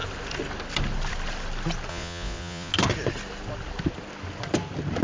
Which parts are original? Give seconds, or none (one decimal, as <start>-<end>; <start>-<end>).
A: 0.0-1.9; 2.7-5.0